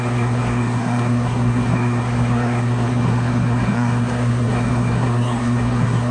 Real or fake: fake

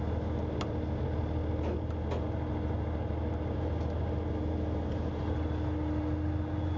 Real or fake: real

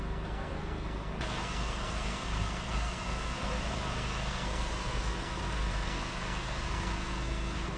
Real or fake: fake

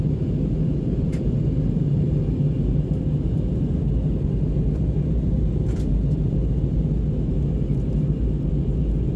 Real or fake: real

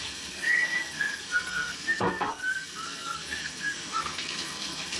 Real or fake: fake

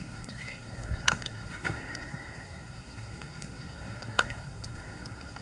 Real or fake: fake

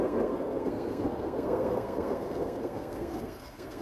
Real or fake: fake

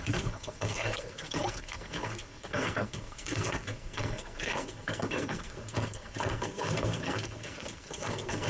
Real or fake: fake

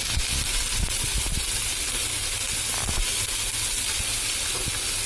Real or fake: real